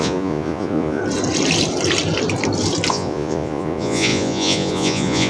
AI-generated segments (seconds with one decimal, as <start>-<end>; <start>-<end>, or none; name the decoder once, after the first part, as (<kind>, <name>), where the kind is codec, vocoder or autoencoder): 0.0-1.0 (vocoder, Vocos); 2.9-5.3